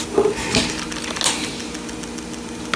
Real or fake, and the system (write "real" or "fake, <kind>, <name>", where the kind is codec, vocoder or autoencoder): real